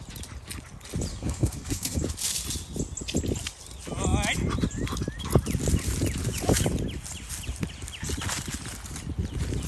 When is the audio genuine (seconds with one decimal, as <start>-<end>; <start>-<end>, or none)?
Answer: 0.0-1.1; 2.0-9.7